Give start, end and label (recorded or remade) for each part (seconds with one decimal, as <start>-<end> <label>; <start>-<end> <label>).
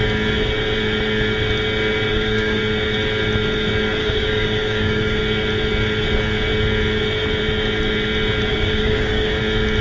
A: 0.0-2.1 recorded; 2.1-2.6 remade; 2.6-4.0 recorded; 4.0-5.2 remade; 5.2-8.5 recorded; 8.5-9.4 remade; 9.4-9.8 recorded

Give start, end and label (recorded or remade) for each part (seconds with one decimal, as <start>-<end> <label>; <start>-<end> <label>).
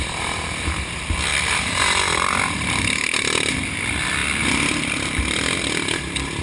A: 0.0-6.4 remade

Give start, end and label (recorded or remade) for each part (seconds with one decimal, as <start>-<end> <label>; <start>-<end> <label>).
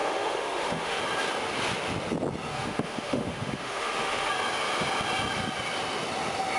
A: 0.0-1.0 remade; 1.0-2.5 recorded; 2.5-4.3 remade; 4.3-6.6 recorded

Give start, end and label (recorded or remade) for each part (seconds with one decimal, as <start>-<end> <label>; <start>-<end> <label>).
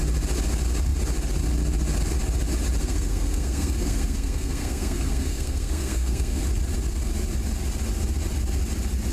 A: 0.0-2.8 recorded; 2.8-6.4 remade; 6.4-9.1 recorded